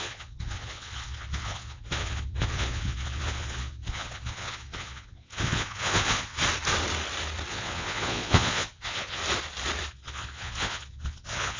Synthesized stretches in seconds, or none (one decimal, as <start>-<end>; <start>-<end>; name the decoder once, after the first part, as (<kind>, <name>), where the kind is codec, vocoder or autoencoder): 0.0-6.4 (vocoder, Vocos); 7.5-9.2; 9.9-11.6